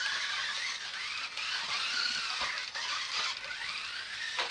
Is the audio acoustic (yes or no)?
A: yes